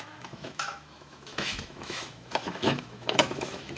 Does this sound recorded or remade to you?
remade